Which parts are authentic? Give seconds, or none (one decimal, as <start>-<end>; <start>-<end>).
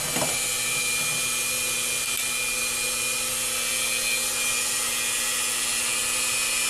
0.0-6.7